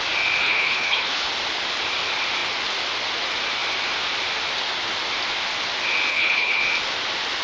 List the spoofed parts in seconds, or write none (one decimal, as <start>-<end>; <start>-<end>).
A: 0.4-1.3; 6.1-6.6